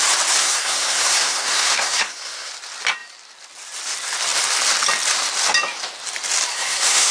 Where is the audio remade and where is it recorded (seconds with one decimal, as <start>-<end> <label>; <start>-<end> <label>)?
0.0-0.4 recorded; 0.4-2.5 remade; 2.5-6.5 recorded; 6.5-7.1 remade